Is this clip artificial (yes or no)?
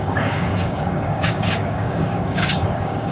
yes